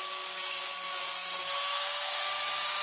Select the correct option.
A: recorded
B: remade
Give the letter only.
B